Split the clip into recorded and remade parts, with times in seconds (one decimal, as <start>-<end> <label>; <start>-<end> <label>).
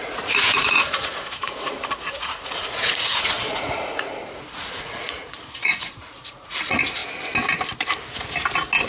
0.0-7.0 remade; 7.0-8.9 recorded